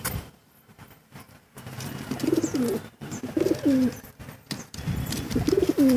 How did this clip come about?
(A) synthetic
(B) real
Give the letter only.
B